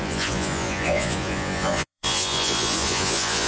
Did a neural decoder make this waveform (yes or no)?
yes